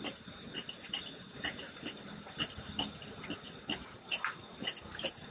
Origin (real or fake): real